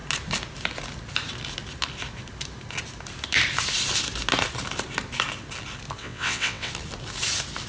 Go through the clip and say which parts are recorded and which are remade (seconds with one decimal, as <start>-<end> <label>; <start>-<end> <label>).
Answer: 0.0-6.0 recorded; 6.0-6.7 remade; 6.7-7.7 recorded